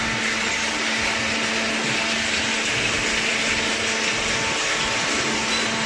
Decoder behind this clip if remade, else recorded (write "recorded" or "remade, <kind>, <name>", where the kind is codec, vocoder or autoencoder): recorded